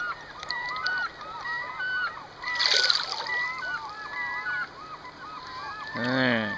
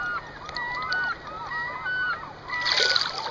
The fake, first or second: first